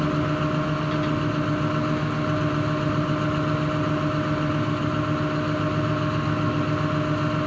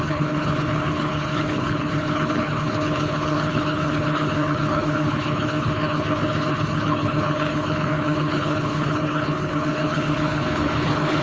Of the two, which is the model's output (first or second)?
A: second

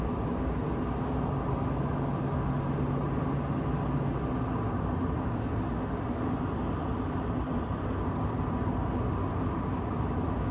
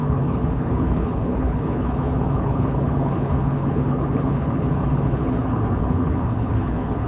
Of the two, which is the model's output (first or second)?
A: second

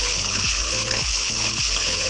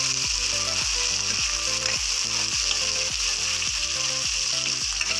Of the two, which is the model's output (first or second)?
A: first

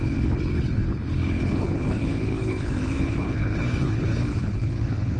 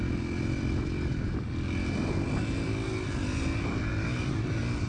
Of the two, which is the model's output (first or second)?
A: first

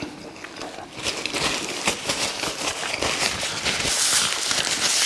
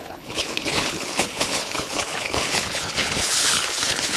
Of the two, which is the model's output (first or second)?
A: second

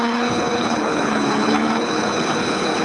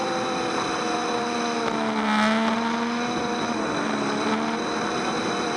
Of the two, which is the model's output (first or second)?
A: first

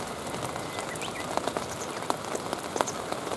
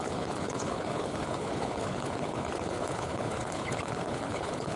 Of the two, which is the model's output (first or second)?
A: second